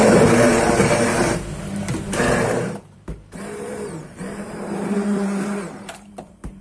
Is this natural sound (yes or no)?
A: no